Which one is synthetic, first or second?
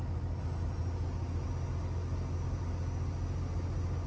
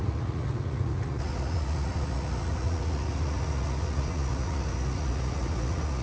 second